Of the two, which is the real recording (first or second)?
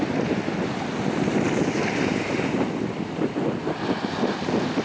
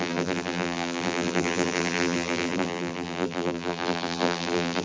first